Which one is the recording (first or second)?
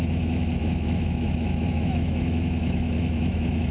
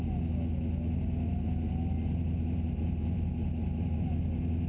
second